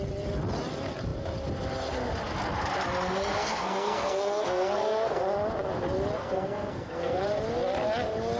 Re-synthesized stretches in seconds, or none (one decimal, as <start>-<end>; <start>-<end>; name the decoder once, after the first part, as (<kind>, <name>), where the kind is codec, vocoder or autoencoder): 3.3-5.2 (codec, SNAC); 6.2-7.2